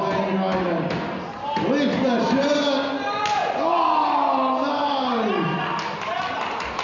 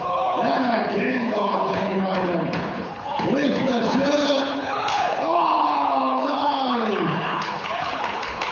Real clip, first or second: first